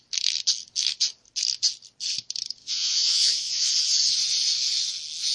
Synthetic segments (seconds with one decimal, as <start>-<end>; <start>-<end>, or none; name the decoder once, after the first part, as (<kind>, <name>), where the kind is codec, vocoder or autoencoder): 2.6-3.7 (vocoder, Vocos)